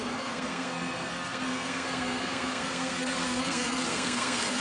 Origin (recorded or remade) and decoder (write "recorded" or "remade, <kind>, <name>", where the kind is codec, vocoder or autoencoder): remade, codec, SNAC